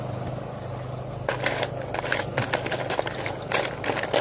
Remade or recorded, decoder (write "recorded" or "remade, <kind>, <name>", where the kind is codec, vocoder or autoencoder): recorded